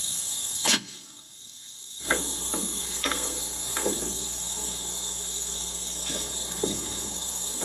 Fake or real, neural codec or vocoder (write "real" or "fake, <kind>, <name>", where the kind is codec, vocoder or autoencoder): fake, codec, SNAC